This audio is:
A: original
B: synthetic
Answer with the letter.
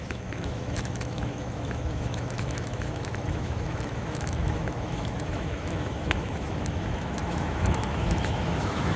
B